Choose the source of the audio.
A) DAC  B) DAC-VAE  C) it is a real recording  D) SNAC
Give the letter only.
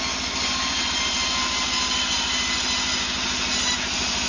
C